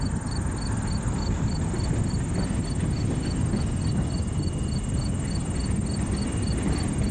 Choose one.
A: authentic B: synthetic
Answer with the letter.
A